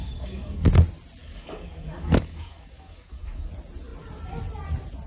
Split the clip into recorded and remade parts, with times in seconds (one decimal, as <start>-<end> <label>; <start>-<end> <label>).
0.0-0.7 remade; 0.7-1.2 recorded; 1.2-3.5 remade; 3.5-5.1 recorded